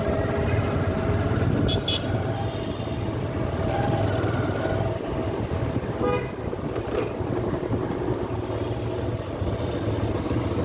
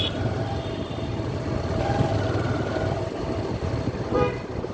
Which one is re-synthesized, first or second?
second